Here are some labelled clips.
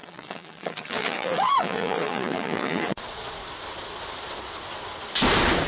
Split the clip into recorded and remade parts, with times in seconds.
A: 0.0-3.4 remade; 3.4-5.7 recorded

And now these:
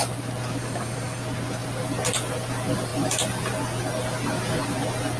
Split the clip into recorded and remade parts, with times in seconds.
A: 0.0-0.6 recorded; 0.6-1.2 remade; 1.2-5.2 recorded

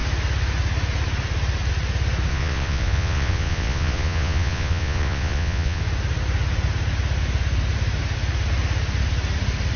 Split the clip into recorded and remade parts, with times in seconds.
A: 0.0-2.3 recorded; 2.3-5.8 remade; 5.8-9.8 recorded

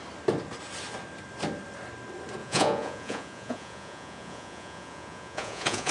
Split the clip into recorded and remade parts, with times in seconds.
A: 0.0-2.4 recorded; 2.4-5.9 remade

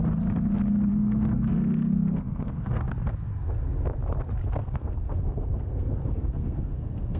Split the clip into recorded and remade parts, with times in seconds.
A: 0.0-0.9 recorded; 0.9-2.8 remade; 2.8-4.6 recorded; 4.6-7.2 remade

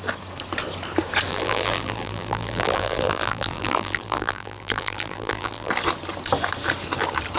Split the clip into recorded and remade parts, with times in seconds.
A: 0.0-1.3 recorded; 1.3-5.7 remade; 5.7-7.4 recorded